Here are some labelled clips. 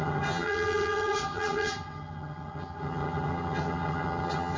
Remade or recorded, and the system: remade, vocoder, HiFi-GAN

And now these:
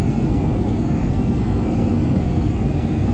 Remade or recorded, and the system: remade, codec, SNAC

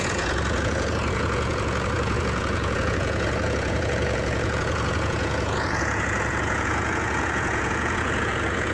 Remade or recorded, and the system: remade, vocoder, Vocos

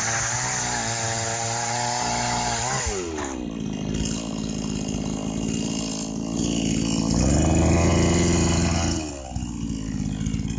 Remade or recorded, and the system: recorded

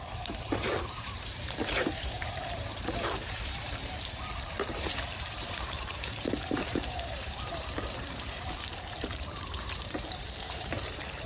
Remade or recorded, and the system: remade, vocoder, BigVGAN v2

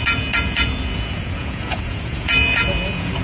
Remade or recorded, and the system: remade, vocoder, Vocos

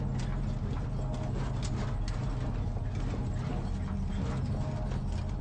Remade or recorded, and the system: recorded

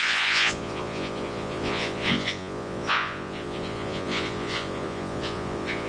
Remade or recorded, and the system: remade, vocoder, Vocos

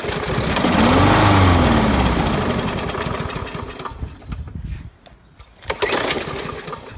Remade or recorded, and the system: recorded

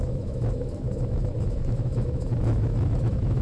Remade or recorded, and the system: remade, autoencoder, DAC-VAE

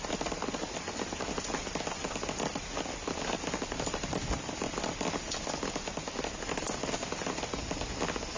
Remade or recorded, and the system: recorded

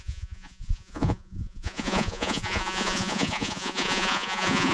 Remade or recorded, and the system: remade, vocoder, Vocos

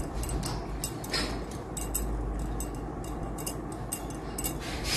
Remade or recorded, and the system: recorded